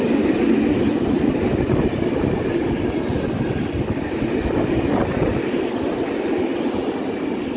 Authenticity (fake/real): real